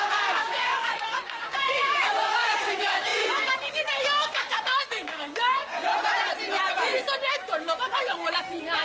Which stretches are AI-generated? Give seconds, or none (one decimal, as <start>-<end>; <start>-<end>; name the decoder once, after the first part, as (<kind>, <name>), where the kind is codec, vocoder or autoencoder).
0.0-5.9 (codec, DAC); 6.7-8.8